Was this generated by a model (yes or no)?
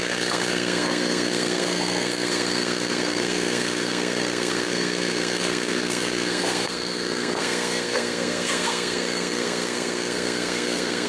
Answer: yes